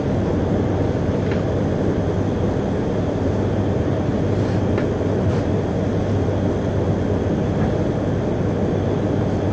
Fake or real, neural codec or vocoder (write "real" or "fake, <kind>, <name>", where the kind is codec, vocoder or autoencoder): real